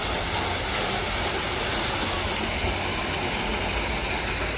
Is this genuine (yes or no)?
yes